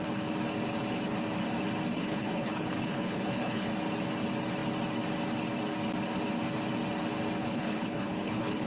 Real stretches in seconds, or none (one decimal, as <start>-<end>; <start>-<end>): 0.0-1.9; 3.7-7.4

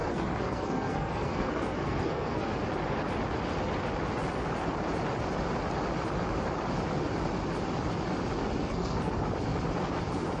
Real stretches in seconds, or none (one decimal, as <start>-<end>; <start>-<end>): 2.5-8.6; 9.1-10.4

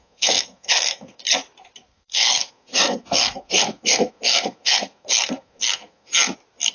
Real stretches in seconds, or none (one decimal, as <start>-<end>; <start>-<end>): 1.2-1.9; 6.1-6.7

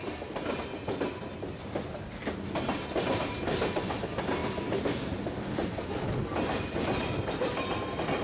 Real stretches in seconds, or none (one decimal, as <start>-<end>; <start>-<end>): 0.0-8.2